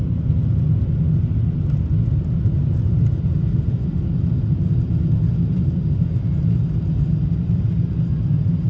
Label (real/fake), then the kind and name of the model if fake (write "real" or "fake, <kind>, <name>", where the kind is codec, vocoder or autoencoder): real